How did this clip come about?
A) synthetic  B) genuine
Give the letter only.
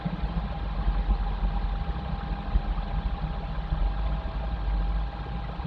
B